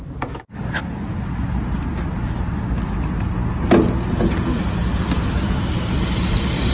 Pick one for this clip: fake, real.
real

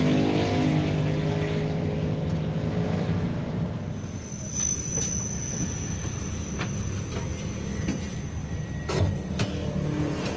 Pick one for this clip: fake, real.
real